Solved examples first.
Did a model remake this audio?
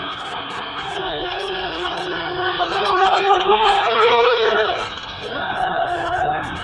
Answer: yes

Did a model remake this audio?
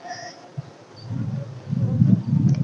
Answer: no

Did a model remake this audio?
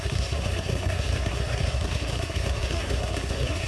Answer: yes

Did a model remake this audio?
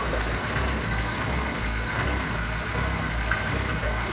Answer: yes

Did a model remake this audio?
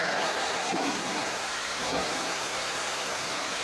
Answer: yes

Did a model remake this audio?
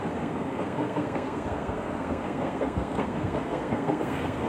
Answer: yes